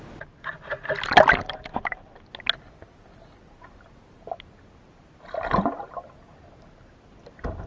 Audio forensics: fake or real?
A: real